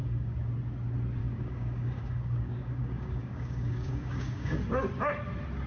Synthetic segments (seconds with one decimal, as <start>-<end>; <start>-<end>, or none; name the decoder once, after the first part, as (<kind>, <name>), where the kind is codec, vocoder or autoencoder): 0.0-0.5 (codec, DAC); 1.2-4.6